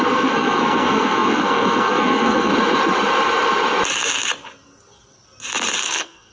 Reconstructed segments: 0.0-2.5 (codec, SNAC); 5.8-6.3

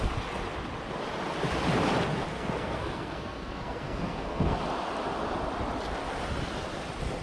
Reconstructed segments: 2.3-4.6 (codec, SNAC)